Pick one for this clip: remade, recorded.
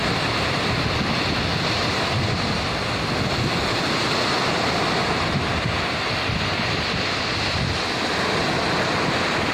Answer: recorded